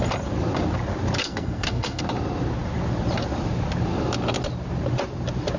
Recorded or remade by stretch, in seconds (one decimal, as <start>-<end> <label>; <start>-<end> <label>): 0.0-1.2 recorded; 1.2-2.0 remade; 2.0-5.6 recorded